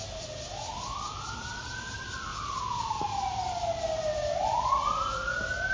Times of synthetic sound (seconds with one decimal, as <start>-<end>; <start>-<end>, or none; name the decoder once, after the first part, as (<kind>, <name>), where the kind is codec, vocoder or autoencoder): none